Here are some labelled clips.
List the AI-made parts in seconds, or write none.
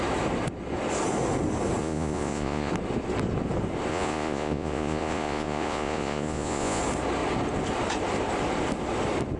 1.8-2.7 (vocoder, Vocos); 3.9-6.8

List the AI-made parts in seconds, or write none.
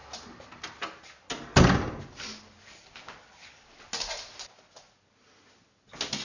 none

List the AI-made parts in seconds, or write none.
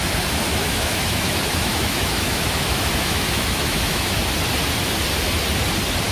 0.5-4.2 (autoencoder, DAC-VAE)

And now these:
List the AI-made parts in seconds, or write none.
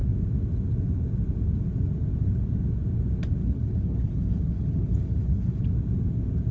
3.4-5.6 (codec, HILCodec)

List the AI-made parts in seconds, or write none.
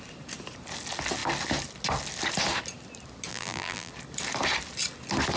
3.3-3.9 (vocoder, BigVGAN v2)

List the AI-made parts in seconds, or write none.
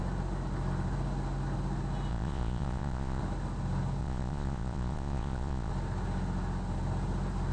2.1-3.2 (vocoder, Vocos); 4.0-5.7